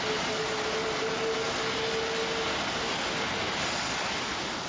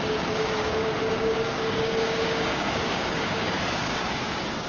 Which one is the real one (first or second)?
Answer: first